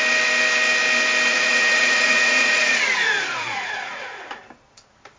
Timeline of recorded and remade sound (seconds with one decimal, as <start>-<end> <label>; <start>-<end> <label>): 0.0-1.3 recorded; 1.3-4.3 remade; 4.3-5.2 recorded